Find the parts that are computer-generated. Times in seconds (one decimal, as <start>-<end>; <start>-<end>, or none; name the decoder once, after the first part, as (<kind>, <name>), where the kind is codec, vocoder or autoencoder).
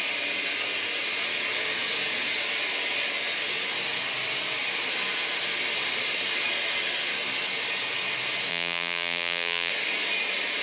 8.5-9.7 (vocoder, BigVGAN v2)